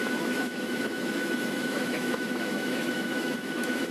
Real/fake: fake